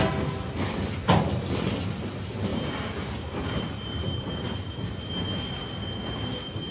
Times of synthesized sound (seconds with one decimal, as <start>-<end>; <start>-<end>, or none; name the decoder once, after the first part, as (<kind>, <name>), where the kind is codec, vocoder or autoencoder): 1.0-1.9 (vocoder, BigVGAN v2); 2.5-5.0